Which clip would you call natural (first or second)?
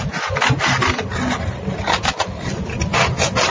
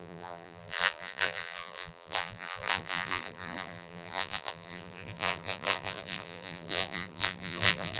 first